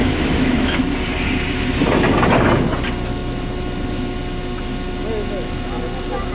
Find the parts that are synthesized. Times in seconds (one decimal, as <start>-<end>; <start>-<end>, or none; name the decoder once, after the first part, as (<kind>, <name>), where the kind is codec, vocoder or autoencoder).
0.0-0.8 (autoencoder, DAC-VAE)